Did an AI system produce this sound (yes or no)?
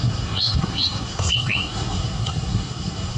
yes